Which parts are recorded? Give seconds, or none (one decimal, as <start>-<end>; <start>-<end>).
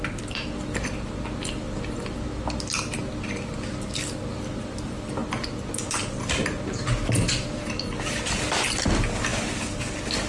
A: 0.0-10.3